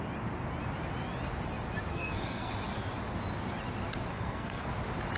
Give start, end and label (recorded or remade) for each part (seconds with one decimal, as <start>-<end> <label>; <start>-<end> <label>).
0.0-1.9 recorded; 1.9-2.5 remade; 2.5-4.1 recorded; 4.1-4.7 remade; 4.7-5.2 recorded